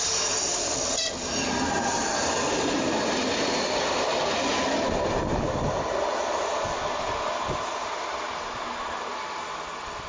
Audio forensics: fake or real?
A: real